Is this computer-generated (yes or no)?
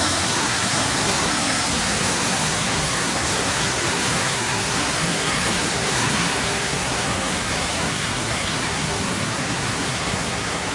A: yes